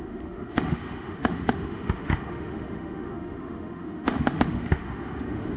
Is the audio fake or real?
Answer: fake